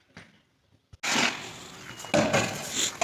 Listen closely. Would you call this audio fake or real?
real